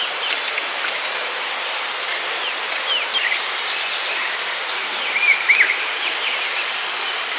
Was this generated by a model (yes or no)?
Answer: yes